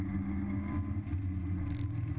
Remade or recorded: recorded